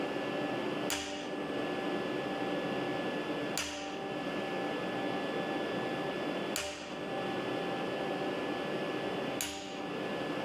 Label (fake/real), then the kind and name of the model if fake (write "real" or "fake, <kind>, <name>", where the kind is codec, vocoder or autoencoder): real